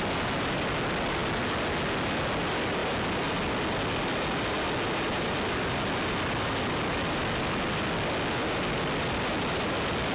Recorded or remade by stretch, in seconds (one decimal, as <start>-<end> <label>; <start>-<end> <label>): 0.0-10.1 recorded